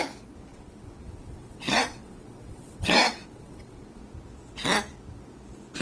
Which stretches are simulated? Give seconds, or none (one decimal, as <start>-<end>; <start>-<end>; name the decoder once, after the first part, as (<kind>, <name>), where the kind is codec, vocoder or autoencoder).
0.5-4.0 (vocoder, WaveNeXt)